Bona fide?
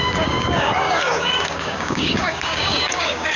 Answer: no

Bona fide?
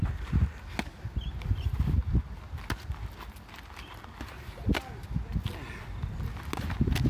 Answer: yes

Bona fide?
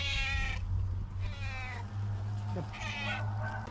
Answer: yes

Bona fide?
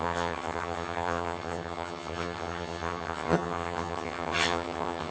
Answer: no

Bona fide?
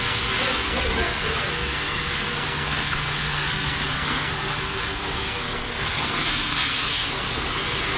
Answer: no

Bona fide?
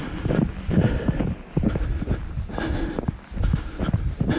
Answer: yes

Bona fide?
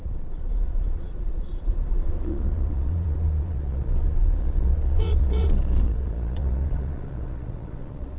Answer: no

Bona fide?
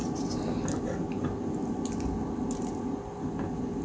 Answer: yes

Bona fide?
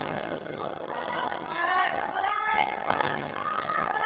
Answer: no